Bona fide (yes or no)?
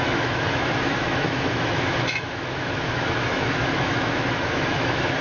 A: no